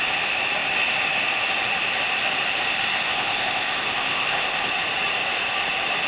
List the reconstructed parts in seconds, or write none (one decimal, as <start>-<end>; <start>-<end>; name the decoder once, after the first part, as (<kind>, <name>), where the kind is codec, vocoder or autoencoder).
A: 3.1-4.7 (codec, ZipCodec)